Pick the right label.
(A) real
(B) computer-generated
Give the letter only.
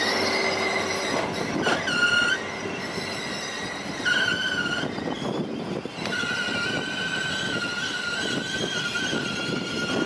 A